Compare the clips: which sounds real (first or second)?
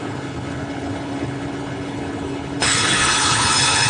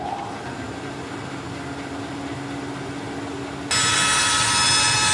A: second